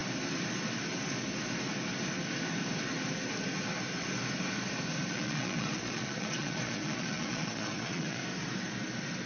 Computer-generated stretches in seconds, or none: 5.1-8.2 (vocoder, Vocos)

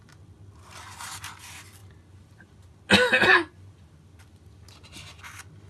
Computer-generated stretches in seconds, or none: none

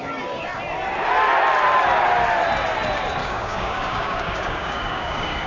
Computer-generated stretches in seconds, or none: 3.2-5.5 (codec, DAC)